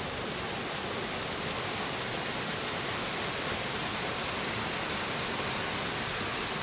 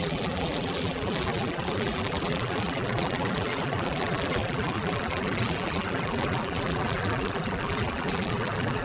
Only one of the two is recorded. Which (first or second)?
first